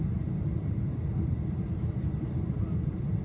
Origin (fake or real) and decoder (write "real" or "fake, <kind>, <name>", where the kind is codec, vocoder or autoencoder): real